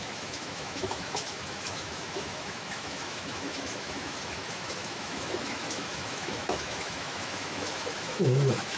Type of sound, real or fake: fake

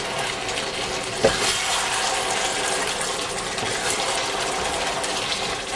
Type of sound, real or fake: real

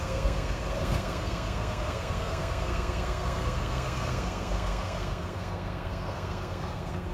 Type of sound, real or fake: fake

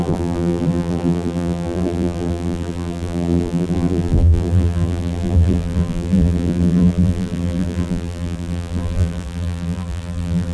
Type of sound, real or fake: fake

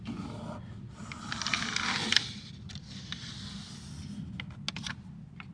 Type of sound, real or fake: real